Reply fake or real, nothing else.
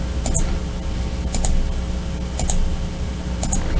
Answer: real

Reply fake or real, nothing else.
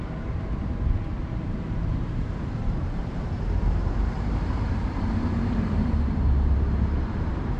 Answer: fake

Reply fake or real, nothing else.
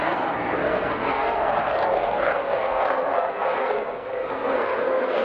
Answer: fake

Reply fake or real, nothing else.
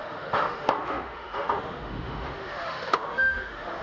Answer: fake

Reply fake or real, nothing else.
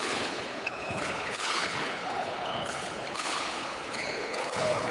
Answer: fake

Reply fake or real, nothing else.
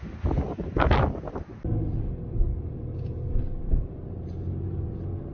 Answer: real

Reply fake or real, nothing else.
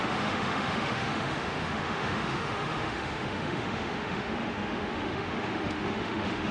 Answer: fake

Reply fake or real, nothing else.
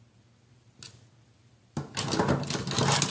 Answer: real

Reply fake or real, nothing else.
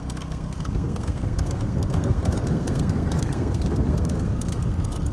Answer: fake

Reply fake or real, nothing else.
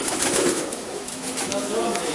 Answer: fake